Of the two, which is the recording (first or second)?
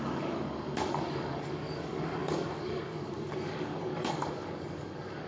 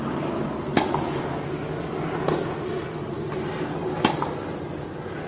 second